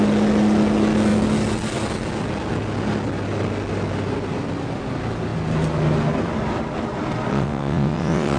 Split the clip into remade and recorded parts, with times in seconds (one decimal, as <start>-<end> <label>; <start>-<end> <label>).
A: 0.0-7.3 recorded; 7.3-8.4 remade